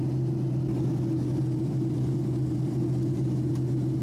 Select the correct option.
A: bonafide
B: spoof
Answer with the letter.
A